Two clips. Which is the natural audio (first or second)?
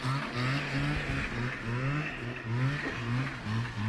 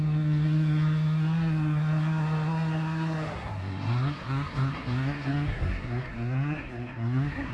first